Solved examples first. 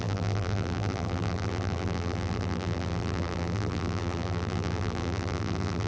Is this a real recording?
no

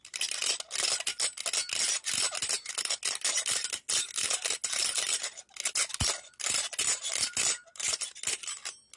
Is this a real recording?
yes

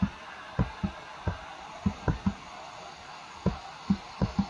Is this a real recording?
yes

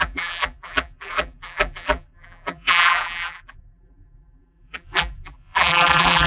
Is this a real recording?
no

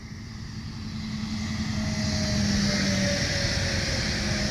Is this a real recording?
yes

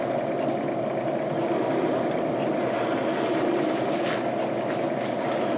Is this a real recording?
yes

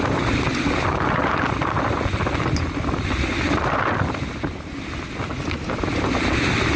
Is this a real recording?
yes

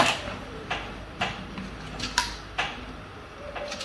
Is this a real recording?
no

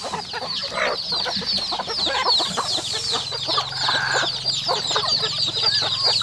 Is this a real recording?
yes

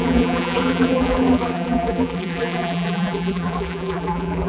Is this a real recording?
no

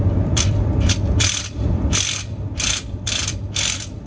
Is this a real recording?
no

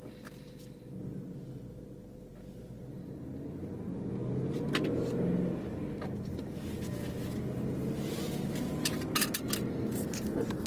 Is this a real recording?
yes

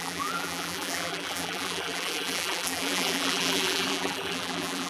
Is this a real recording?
no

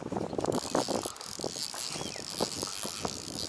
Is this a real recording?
yes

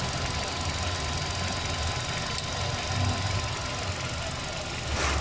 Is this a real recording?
yes